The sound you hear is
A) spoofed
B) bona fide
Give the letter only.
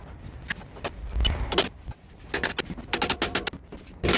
B